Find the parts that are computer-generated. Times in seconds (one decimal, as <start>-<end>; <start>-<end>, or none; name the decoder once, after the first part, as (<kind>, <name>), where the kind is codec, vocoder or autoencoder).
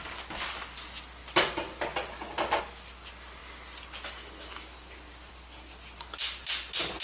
none